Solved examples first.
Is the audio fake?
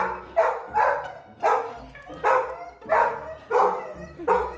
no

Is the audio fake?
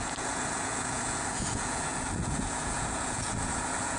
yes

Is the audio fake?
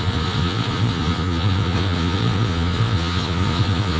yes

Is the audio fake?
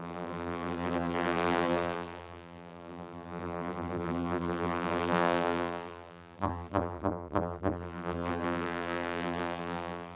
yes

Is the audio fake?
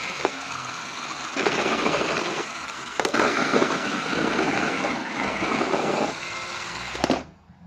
yes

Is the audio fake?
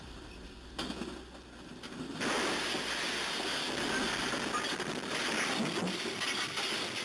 no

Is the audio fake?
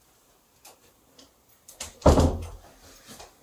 no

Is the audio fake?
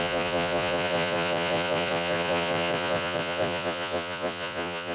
yes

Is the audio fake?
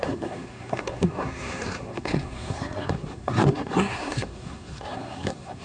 yes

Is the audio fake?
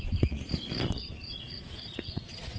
yes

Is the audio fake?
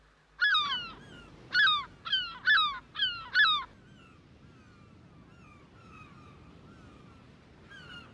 no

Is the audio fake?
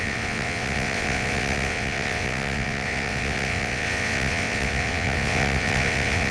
yes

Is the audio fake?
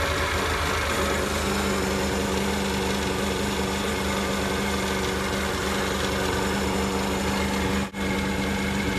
no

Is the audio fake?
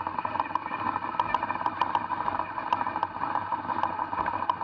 no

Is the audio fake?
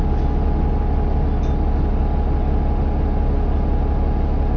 no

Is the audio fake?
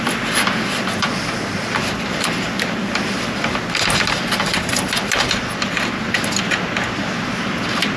no